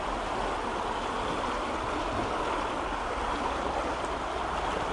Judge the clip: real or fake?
real